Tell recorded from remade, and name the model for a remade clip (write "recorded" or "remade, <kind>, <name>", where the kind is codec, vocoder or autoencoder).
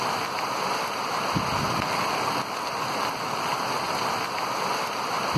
recorded